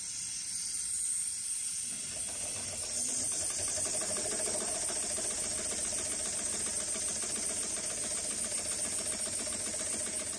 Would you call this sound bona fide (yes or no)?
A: yes